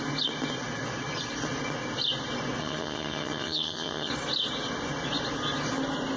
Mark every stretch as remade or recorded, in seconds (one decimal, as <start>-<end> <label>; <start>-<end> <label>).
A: 0.0-2.6 recorded; 2.6-4.1 remade; 4.1-6.2 recorded